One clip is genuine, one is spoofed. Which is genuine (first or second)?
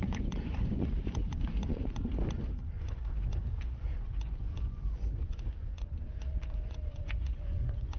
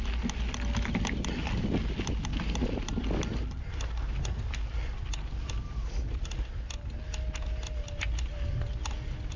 second